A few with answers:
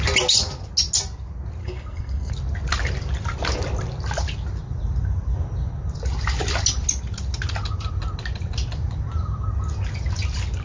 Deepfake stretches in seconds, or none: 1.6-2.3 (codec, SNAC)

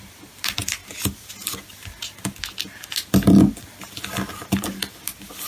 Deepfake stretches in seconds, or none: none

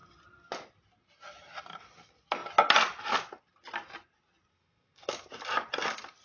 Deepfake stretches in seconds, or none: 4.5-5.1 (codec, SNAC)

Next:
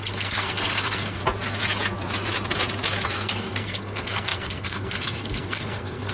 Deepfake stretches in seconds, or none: 0.0-1.2 (codec, SNAC); 3.1-6.1